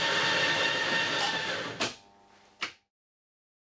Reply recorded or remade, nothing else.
recorded